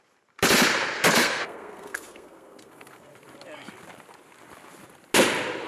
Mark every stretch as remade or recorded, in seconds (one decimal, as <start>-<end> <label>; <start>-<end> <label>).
0.0-1.2 recorded; 1.2-3.1 remade; 3.1-5.7 recorded